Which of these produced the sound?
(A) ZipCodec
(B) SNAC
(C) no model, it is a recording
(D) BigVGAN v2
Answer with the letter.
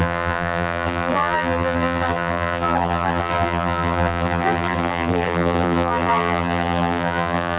D